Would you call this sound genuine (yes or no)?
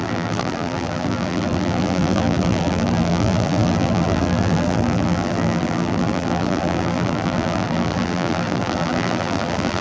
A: no